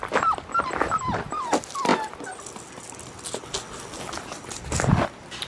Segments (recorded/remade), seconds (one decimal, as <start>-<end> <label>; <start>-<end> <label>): 0.0-5.5 recorded